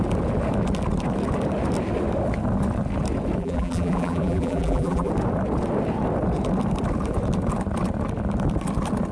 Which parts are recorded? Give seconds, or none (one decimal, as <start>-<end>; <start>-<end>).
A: 0.0-3.4; 5.1-9.1